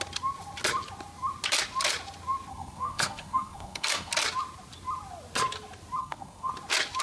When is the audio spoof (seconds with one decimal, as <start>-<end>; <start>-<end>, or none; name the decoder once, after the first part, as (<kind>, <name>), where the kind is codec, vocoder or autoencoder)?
2.5-4.1 (codec, SNAC); 6.0-6.5